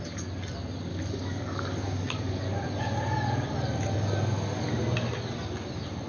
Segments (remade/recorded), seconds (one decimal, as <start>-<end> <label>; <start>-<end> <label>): 0.0-0.9 recorded; 0.9-2.4 remade; 2.4-6.1 recorded

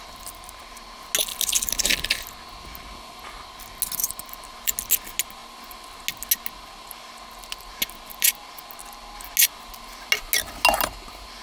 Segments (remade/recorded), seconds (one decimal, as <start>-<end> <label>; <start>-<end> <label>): 0.0-11.4 recorded

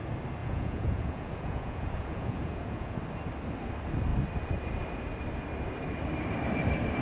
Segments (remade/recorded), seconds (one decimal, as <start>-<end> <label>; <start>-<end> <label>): 0.0-0.4 recorded; 0.4-3.0 remade; 3.0-7.0 recorded

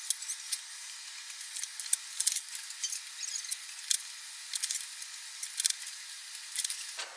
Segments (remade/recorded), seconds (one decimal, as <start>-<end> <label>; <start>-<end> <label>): 0.0-7.2 recorded

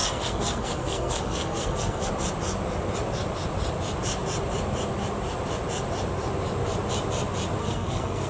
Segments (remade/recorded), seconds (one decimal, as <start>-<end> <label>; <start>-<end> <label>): 0.0-2.1 remade; 2.1-7.6 recorded; 7.6-8.3 remade

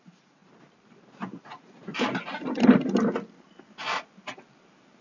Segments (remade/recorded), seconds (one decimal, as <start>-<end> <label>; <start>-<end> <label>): 0.0-0.4 remade; 0.4-1.4 recorded; 1.4-1.9 remade; 1.9-5.0 recorded